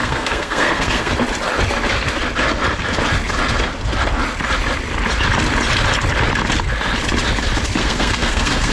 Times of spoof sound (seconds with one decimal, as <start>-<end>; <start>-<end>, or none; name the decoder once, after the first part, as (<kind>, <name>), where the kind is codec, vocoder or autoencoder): 0.0-1.1 (codec, SNAC); 7.8-8.7